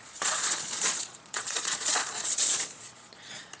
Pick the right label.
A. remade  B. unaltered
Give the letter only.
A